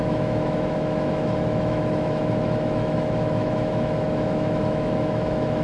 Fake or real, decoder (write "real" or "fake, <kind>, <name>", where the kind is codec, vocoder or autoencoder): fake, autoencoder, DAC-VAE